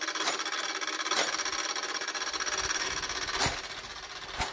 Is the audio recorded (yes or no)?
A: yes